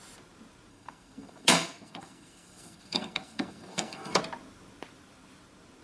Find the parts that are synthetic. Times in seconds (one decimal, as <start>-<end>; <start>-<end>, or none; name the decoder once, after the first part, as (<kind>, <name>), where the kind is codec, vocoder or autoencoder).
0.7-4.2 (codec, SNAC)